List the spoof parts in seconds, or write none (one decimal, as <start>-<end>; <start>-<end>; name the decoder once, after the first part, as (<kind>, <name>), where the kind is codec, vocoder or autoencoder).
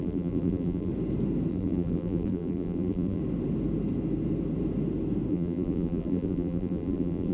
0.0-0.9 (vocoder, BigVGAN v2); 1.5-3.2; 5.3-7.3